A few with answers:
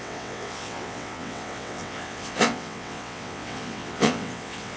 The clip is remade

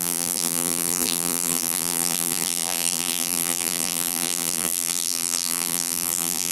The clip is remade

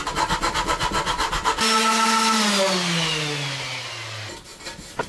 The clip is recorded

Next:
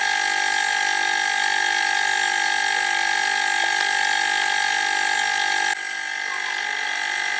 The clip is recorded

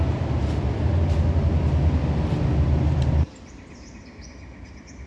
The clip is recorded